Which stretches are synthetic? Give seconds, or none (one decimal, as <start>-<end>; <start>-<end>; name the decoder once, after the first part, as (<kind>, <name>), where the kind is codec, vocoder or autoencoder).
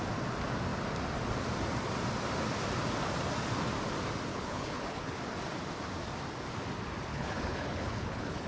4.3-5.2 (codec, HILCodec); 7.1-8.5